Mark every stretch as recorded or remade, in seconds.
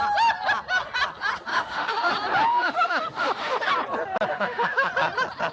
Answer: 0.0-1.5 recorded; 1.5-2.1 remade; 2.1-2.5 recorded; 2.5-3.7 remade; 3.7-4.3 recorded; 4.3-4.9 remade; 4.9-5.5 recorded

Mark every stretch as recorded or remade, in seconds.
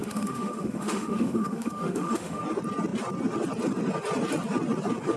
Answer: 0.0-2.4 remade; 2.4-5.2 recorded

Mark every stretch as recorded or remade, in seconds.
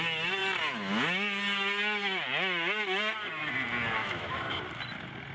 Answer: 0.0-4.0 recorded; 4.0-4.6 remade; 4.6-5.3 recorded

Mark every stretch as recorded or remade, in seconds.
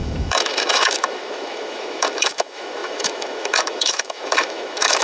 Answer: 0.0-5.0 remade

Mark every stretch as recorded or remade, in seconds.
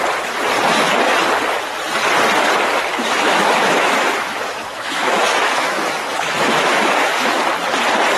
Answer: 0.0-3.0 recorded; 3.0-7.4 remade; 7.4-8.2 recorded